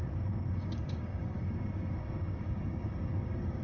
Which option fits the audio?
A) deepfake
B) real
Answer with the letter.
A